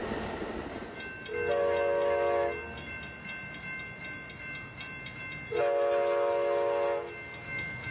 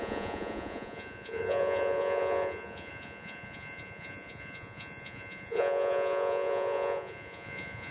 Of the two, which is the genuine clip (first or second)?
first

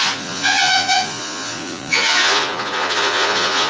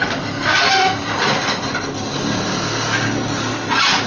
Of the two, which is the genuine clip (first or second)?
second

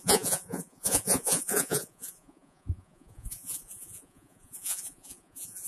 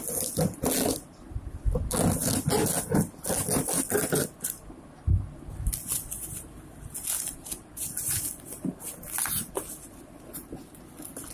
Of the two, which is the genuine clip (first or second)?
second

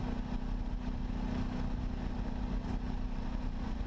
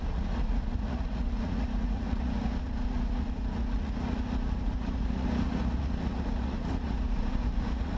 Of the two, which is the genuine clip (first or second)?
first